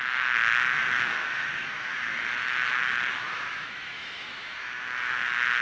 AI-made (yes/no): yes